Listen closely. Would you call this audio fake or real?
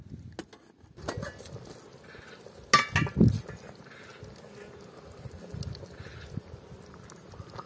real